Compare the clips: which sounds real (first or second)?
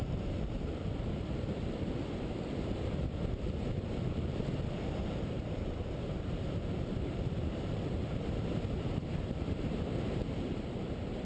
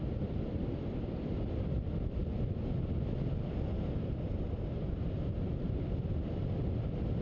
second